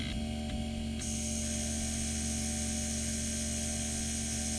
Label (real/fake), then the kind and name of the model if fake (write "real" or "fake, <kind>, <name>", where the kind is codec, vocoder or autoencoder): real